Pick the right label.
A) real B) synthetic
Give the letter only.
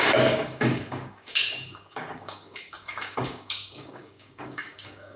B